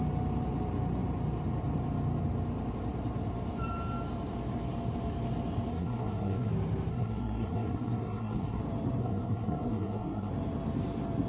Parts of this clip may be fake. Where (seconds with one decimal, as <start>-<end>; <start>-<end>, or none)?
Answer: 5.7-6.5; 6.9-8.6; 9.0-10.3